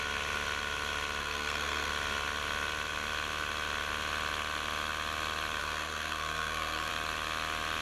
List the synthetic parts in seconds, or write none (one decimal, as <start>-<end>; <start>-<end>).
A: 1.2-1.9; 5.6-6.9